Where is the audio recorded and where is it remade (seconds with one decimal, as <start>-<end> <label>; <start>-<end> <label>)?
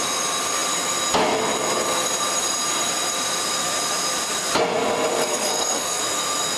0.0-5.2 recorded; 5.2-6.0 remade; 6.0-6.6 recorded